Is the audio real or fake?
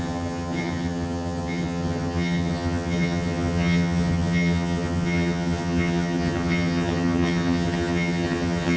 fake